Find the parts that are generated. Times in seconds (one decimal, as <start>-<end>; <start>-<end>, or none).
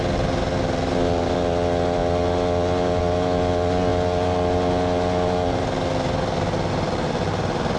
none